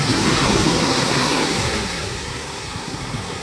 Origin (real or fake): fake